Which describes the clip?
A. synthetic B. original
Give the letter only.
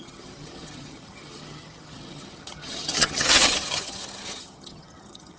A